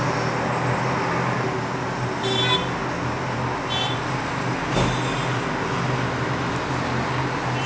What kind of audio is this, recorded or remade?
recorded